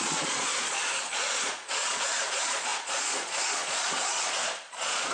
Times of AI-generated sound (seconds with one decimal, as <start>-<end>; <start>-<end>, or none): 0.0-5.1